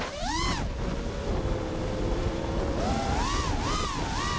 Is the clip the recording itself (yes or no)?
yes